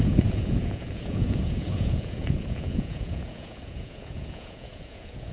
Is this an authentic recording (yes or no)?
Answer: no